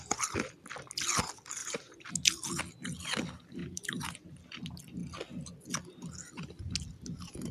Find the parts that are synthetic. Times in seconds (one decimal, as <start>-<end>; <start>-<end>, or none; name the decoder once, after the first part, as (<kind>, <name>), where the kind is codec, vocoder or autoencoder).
1.6-2.1 (vocoder, BigVGAN v2); 3.6-4.3